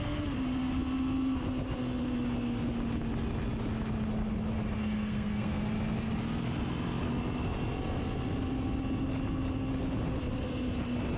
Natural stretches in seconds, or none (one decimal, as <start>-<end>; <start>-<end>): 0.0-4.8; 5.6-11.2